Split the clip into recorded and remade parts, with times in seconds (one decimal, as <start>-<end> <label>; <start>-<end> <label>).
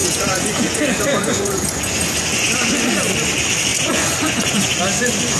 0.0-2.5 remade; 2.5-3.7 recorded; 3.7-4.8 remade; 4.8-5.4 recorded